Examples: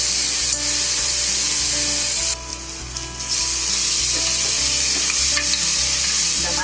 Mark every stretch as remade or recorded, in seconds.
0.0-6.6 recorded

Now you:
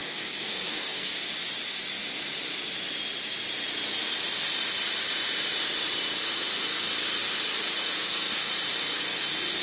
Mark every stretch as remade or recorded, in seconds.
0.0-1.1 remade; 1.1-9.6 recorded

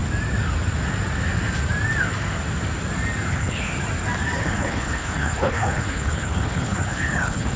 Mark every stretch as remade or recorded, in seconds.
0.0-3.3 recorded; 3.3-3.7 remade; 3.7-4.4 recorded; 4.4-7.6 remade

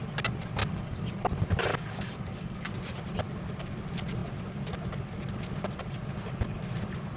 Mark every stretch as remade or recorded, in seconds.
0.0-0.6 recorded; 0.6-1.2 remade; 1.2-1.7 recorded; 1.7-2.7 remade; 2.7-7.2 recorded

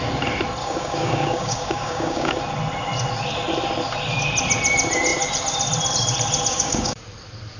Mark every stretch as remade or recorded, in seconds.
0.0-0.6 recorded; 0.6-2.4 remade; 2.4-6.5 recorded; 6.5-7.0 remade; 7.0-7.6 recorded